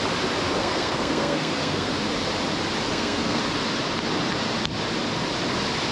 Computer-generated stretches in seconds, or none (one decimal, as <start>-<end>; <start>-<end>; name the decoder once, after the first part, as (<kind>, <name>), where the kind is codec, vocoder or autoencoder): 0.6-1.9 (codec, SNAC); 2.9-3.4